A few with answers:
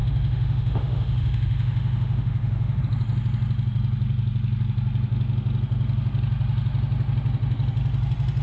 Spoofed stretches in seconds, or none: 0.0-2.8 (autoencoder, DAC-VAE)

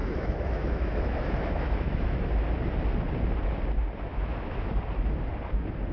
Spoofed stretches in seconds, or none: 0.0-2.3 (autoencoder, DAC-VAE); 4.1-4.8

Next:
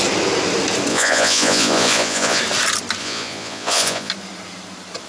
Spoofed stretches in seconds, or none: 0.9-2.4 (vocoder, Vocos); 3.0-4.1

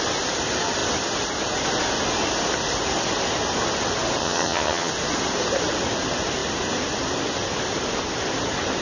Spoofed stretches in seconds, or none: 4.2-4.9 (vocoder, HiFi-GAN)

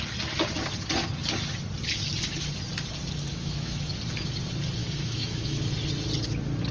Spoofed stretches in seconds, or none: 3.3-3.9 (autoencoder, DAC-VAE); 4.8-5.6